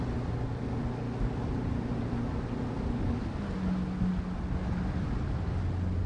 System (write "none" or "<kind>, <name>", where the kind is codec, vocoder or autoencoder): none